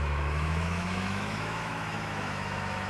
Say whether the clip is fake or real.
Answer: fake